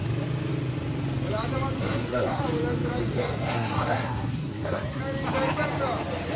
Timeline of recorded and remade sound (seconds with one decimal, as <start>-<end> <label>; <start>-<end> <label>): 0.0-1.8 recorded; 1.8-2.4 remade; 2.4-3.0 recorded; 3.0-5.0 remade; 5.0-6.4 recorded